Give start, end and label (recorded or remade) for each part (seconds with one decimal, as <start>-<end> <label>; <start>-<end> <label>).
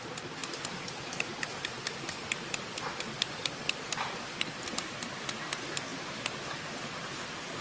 0.0-7.6 recorded